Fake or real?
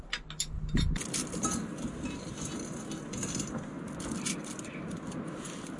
real